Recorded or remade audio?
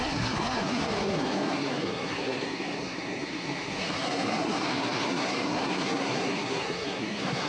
remade